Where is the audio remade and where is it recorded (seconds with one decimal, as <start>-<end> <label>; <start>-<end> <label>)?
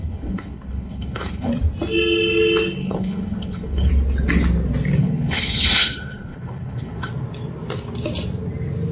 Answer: 0.0-1.5 remade; 1.5-2.8 recorded; 2.8-3.9 remade; 3.9-5.0 recorded; 5.0-7.1 remade; 7.1-8.9 recorded